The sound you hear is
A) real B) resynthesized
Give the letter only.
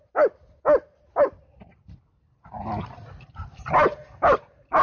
A